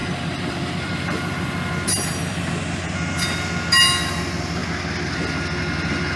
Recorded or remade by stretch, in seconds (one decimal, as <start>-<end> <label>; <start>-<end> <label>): 0.0-2.5 remade; 2.5-6.2 recorded